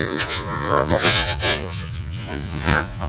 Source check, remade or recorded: remade